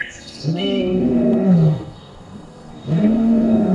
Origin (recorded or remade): remade